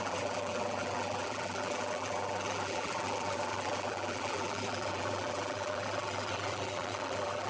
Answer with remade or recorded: remade